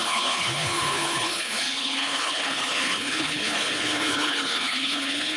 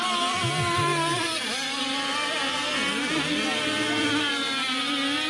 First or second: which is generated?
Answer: first